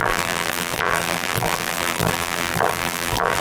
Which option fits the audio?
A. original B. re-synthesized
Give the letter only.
B